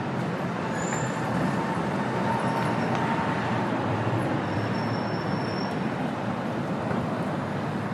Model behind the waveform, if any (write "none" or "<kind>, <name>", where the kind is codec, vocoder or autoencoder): vocoder, BigVGAN v2